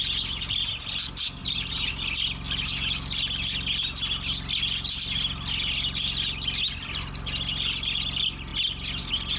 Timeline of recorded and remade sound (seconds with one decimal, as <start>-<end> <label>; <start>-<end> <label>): 0.0-1.4 recorded; 1.4-1.9 remade; 1.9-9.4 recorded